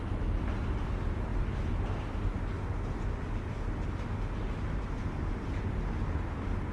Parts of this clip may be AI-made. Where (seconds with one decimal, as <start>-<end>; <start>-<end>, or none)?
none